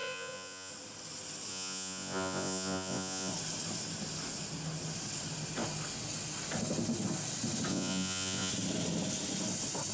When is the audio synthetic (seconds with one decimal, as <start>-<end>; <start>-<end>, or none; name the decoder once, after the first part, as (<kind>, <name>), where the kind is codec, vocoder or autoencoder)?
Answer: 0.0-0.7 (vocoder, Vocos); 1.5-3.3; 7.7-8.5